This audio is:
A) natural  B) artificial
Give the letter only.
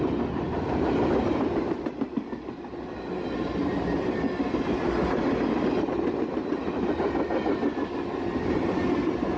A